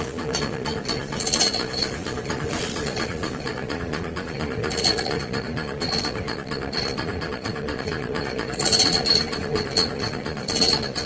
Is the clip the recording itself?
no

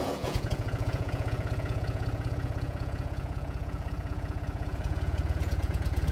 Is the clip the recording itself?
no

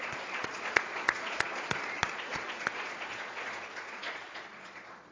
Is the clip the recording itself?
no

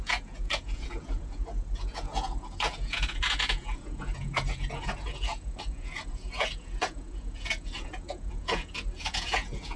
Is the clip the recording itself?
no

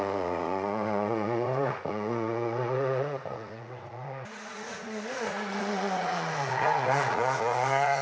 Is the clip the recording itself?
no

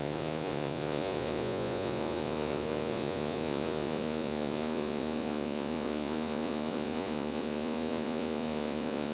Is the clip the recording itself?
no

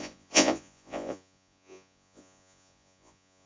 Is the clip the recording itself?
no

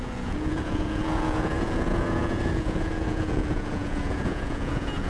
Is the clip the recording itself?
no